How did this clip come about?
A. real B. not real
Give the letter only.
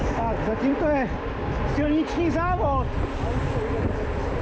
A